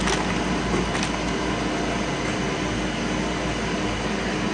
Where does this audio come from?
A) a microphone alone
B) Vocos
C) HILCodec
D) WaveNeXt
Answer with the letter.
A